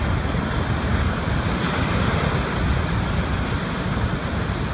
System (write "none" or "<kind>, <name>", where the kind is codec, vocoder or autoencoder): none